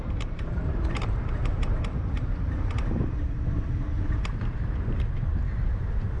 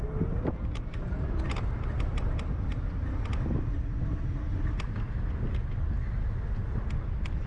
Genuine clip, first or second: second